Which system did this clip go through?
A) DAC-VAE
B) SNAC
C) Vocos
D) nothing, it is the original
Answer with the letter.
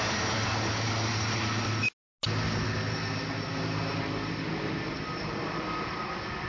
D